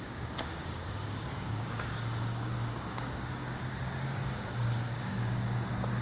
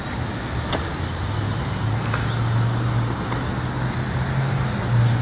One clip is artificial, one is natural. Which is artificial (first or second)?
first